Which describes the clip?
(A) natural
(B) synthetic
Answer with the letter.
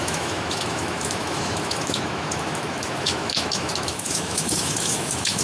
B